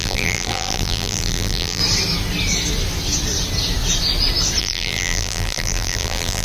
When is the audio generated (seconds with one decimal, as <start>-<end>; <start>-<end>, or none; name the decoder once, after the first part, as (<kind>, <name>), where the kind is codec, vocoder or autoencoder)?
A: 0.0-1.8 (vocoder, BigVGAN v2); 4.6-6.4